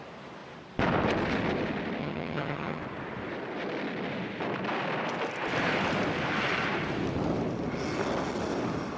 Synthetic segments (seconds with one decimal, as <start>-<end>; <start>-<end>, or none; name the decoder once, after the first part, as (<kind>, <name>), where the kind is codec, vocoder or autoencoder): 2.0-2.8 (vocoder, HiFi-GAN)

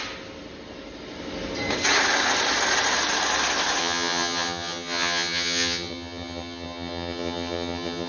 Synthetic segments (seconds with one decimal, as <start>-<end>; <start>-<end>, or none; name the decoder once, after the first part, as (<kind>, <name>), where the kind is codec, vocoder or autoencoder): 3.8-8.1 (vocoder, HiFi-GAN)

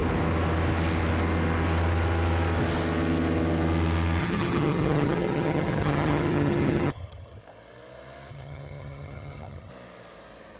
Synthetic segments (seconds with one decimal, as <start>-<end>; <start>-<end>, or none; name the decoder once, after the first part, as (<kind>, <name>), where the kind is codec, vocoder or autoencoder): 4.2-7.4 (vocoder, HiFi-GAN); 8.3-9.7

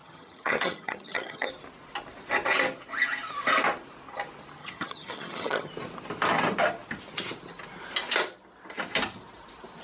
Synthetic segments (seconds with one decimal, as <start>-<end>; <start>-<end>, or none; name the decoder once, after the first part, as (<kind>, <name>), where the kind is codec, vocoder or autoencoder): 0.0-1.5 (vocoder, HiFi-GAN); 4.6-5.7

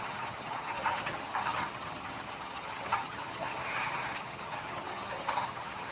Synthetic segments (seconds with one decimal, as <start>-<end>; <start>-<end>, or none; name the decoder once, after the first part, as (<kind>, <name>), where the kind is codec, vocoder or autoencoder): 0.0-5.9 (vocoder, HiFi-GAN)

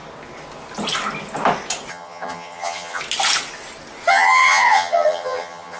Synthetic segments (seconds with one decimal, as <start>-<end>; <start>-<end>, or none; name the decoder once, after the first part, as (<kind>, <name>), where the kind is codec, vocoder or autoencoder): 1.9-3.0 (vocoder, HiFi-GAN); 4.1-5.8

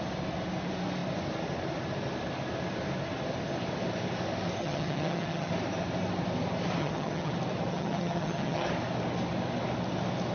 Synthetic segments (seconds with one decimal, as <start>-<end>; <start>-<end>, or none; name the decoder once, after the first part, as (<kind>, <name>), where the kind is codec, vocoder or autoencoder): 4.6-5.5 (vocoder, HiFi-GAN); 6.8-7.3; 7.7-8.7